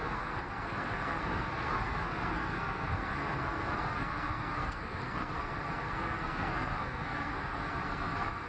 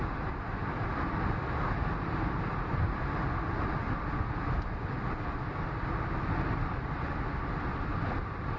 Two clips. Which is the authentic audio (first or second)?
second